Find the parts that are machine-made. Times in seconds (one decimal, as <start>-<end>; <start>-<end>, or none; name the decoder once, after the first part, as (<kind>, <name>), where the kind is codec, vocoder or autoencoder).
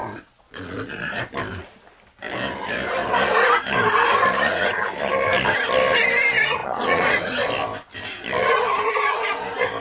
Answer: 0.0-1.2 (vocoder, Vocos); 6.6-7.5